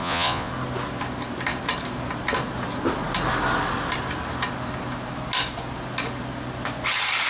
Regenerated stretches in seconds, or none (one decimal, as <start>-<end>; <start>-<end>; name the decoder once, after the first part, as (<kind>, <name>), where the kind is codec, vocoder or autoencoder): 0.0-0.5 (vocoder, Vocos)